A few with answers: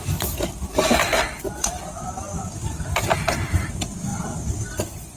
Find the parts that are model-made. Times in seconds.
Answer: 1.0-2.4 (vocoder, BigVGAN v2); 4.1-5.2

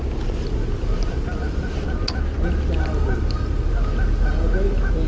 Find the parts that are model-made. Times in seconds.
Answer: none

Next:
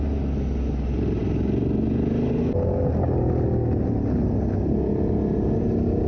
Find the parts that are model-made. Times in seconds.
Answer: none